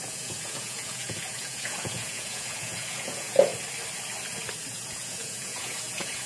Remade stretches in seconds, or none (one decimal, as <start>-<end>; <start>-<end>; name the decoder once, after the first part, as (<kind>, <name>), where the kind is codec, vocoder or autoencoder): 0.0-3.5 (vocoder, Vocos); 4.7-6.3